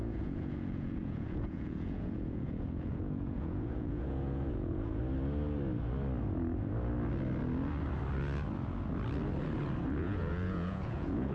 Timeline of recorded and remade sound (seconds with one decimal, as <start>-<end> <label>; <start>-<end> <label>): 0.0-5.0 remade; 5.0-10.0 recorded; 10.0-11.3 remade